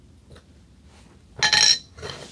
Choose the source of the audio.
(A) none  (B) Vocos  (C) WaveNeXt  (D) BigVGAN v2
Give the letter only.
A